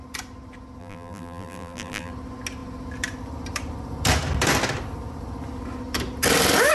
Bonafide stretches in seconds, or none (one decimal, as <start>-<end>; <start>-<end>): 0.0-0.8; 2.1-6.7